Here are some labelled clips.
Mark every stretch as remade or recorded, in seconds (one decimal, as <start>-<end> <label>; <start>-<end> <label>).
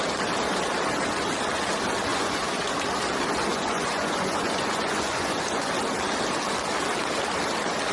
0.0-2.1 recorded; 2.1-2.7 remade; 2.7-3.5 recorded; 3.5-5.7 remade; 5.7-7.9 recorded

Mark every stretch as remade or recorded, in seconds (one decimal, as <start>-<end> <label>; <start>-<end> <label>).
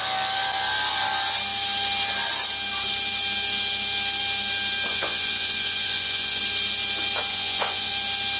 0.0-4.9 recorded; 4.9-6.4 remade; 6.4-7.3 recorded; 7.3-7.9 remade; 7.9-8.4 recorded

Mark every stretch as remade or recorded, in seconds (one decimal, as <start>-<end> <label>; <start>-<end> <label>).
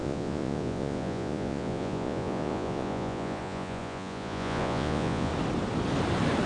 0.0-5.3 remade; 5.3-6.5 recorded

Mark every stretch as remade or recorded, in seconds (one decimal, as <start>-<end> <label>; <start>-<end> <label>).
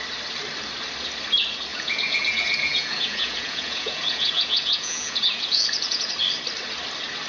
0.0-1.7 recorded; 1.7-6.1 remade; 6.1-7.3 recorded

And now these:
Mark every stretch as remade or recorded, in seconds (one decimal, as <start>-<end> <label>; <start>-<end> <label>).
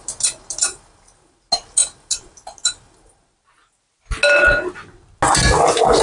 0.0-6.0 recorded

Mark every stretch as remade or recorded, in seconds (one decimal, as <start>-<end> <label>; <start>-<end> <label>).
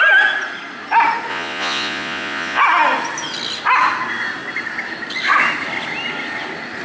0.0-1.3 recorded; 1.3-2.6 remade; 2.6-6.8 recorded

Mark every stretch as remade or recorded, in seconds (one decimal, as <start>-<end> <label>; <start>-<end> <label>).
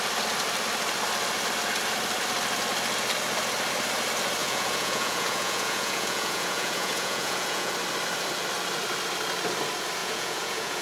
0.0-4.4 recorded; 4.4-7.7 remade; 7.7-10.0 recorded; 10.0-10.8 remade